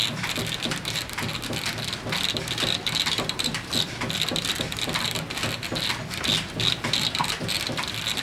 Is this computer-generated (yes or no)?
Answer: no